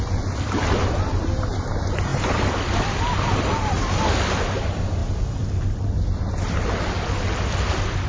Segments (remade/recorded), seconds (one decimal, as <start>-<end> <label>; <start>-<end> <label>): 0.0-0.8 recorded; 0.8-1.7 remade; 1.7-2.1 recorded; 2.1-4.4 remade; 4.4-5.0 recorded; 5.0-5.8 remade; 5.8-8.1 recorded